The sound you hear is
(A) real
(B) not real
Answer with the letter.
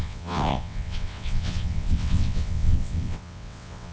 B